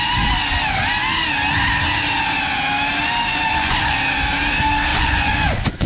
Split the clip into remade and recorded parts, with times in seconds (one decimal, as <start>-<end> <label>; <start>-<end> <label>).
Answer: 0.0-3.3 recorded; 3.3-4.0 remade; 4.0-4.9 recorded; 4.9-5.9 remade